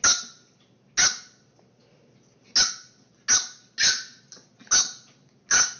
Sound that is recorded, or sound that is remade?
recorded